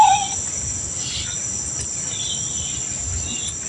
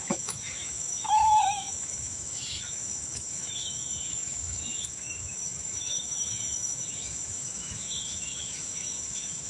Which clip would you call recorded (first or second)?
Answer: first